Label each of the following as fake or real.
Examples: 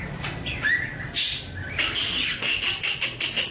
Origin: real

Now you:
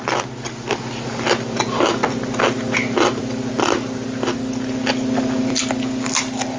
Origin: real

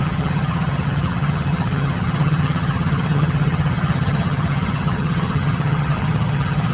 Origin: fake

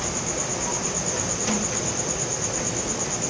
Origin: real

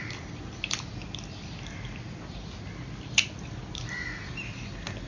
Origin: real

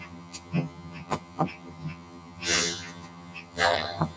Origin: fake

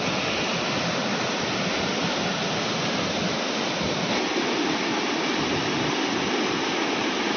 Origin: real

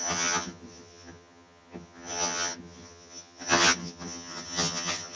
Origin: fake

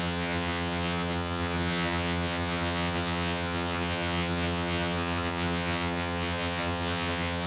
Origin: fake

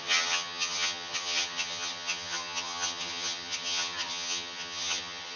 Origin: fake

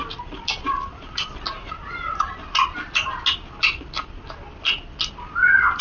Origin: real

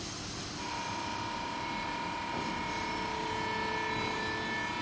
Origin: real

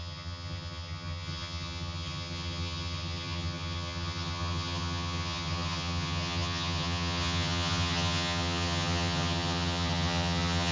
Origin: fake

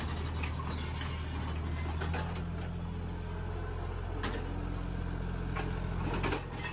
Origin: real